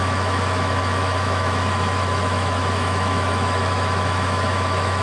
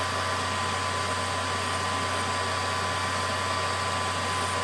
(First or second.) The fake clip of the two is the first